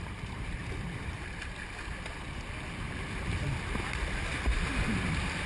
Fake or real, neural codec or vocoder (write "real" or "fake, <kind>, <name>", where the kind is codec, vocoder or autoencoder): fake, vocoder, BigVGAN v2